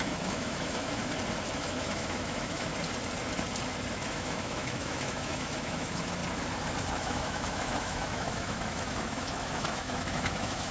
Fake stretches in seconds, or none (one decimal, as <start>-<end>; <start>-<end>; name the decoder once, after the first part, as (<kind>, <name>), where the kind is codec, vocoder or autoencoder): 0.0-1.0 (autoencoder, DAC-VAE); 1.5-2.7; 3.9-6.2; 6.9-10.7